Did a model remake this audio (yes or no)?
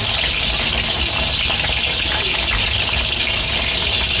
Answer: no